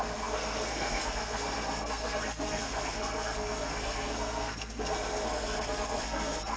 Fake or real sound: fake